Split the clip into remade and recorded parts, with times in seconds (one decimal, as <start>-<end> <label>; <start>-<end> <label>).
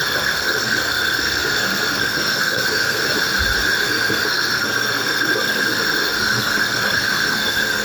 0.0-3.0 remade; 3.0-3.8 recorded; 3.8-7.8 remade